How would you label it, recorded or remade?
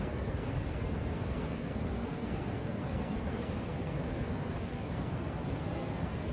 remade